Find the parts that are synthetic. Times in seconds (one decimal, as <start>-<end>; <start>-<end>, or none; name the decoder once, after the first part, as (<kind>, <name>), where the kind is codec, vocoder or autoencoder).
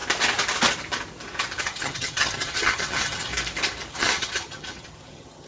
1.6-3.3 (vocoder, HiFi-GAN); 3.9-5.5